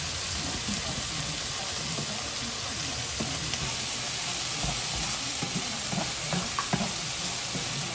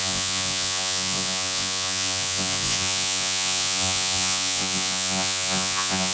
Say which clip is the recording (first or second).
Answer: first